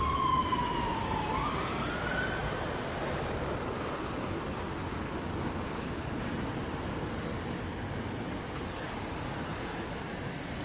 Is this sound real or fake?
real